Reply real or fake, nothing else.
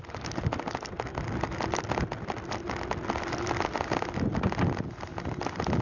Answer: real